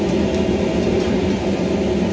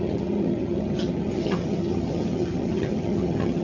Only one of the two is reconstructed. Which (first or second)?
second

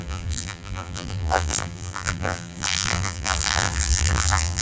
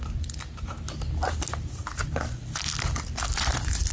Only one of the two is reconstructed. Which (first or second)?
first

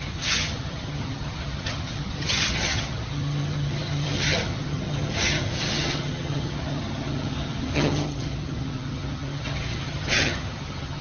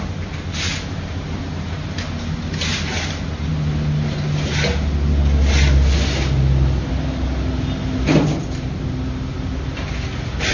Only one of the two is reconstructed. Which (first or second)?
first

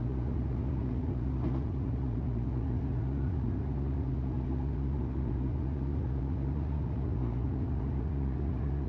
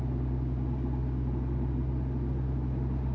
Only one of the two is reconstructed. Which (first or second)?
first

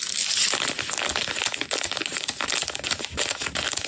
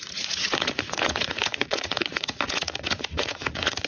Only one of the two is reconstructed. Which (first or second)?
second